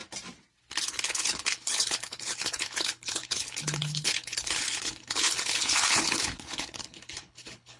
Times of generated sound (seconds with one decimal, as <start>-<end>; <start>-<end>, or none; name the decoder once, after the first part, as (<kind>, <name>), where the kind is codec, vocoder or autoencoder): 0.8-7.8 (codec, HILCodec)